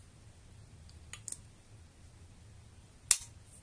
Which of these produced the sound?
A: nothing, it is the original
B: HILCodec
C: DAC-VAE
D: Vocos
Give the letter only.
A